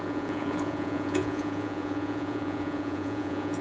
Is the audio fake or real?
fake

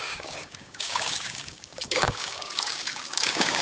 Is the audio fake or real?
fake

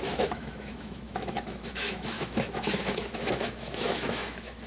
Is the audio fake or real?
fake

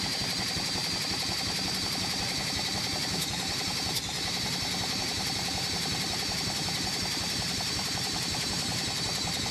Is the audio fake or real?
fake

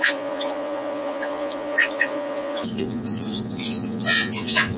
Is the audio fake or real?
fake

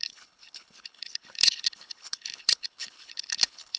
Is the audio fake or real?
fake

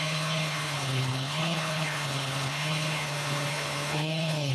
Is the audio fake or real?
fake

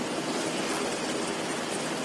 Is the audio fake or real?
real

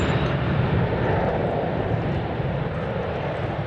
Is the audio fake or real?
real